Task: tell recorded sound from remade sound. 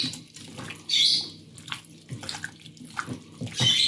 recorded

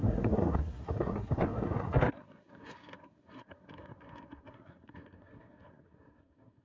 remade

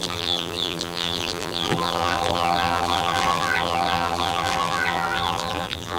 remade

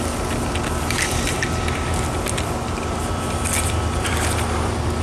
remade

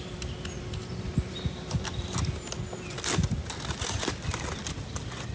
recorded